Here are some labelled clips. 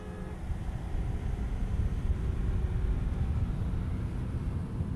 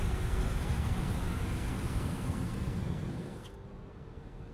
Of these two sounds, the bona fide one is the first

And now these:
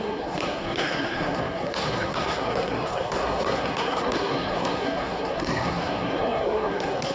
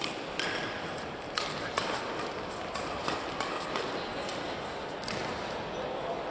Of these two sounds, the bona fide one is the second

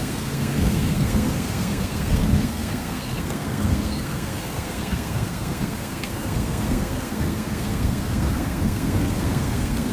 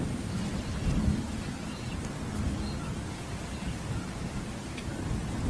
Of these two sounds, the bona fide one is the second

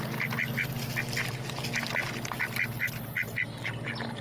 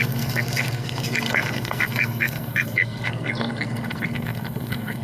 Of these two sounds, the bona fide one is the first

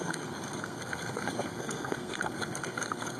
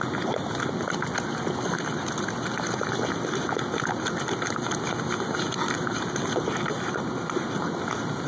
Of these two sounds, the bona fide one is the second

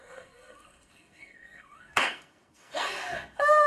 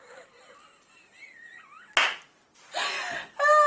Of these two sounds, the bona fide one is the second